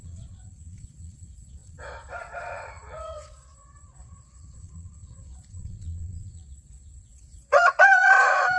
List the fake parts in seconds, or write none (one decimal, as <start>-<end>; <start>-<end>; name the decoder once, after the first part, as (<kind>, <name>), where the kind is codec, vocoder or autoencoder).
0.0-8.6 (vocoder, Vocos)